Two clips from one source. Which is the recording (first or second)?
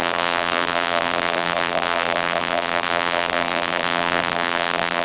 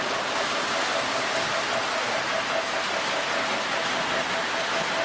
second